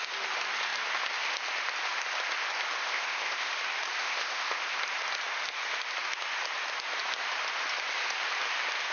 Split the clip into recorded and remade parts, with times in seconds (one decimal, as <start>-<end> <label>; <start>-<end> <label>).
0.0-2.8 recorded; 2.8-3.5 remade; 3.5-4.0 recorded; 4.0-4.8 remade; 4.8-8.9 recorded